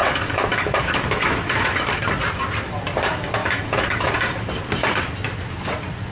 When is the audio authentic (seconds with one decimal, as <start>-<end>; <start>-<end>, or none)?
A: 2.0-3.4; 4.1-6.1